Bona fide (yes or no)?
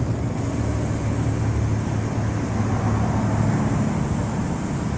yes